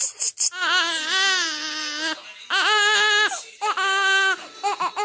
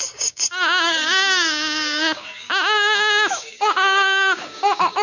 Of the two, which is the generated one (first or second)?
second